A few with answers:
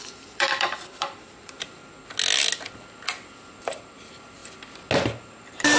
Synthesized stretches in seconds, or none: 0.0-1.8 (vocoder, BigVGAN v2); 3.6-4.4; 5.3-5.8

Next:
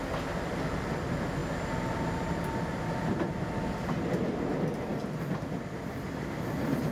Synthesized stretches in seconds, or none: none

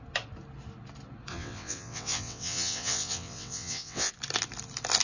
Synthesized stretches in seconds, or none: 1.3-4.1 (vocoder, WaveNeXt)

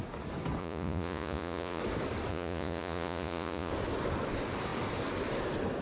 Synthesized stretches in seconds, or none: 0.6-1.8 (vocoder, Vocos); 2.3-3.7